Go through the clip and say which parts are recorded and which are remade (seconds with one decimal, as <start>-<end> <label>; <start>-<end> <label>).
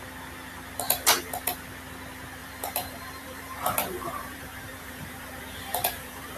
0.0-2.4 recorded; 2.4-6.4 remade